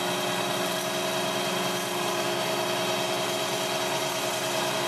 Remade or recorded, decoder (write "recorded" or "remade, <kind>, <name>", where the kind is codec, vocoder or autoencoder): recorded